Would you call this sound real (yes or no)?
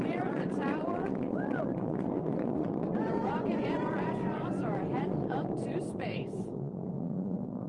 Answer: no